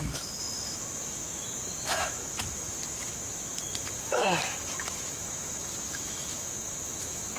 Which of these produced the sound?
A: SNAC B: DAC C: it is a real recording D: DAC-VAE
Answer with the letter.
D